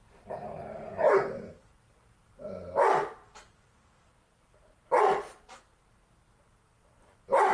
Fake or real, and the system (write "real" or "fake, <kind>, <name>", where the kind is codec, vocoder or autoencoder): fake, vocoder, BigVGAN v2